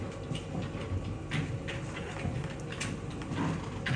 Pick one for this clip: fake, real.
real